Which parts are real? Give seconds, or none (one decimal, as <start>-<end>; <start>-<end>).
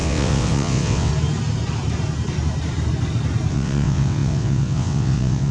1.1-3.5